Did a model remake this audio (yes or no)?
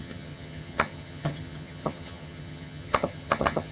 yes